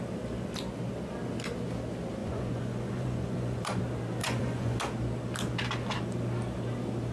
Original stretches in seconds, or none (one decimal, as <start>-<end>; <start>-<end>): 0.0-2.2; 3.8-4.2; 4.8-7.1